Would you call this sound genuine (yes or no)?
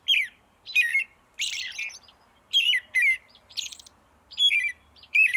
no